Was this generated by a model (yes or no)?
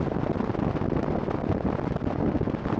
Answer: no